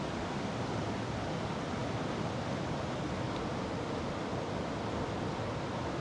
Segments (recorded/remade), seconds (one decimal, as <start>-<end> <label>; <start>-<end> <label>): 0.0-6.0 recorded